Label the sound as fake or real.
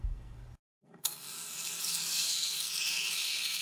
fake